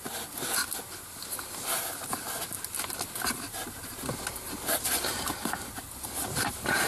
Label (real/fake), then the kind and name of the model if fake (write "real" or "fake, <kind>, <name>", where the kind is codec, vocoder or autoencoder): real